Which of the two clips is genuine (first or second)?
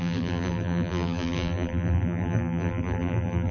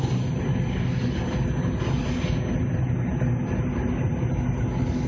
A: second